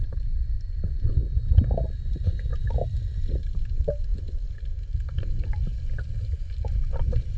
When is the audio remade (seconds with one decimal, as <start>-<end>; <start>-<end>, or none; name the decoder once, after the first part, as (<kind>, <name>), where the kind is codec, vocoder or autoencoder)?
0.0-1.2 (vocoder, BigVGAN v2); 2.1-2.5; 3.2-4.1; 6.1-7.4